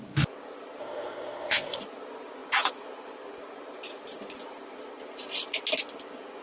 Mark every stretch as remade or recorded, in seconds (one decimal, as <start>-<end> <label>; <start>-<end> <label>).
0.0-0.8 recorded; 0.8-1.8 remade; 1.8-6.4 recorded